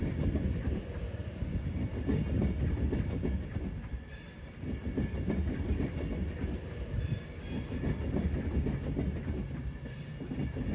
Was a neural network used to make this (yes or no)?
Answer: no